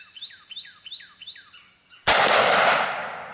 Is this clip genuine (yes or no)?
yes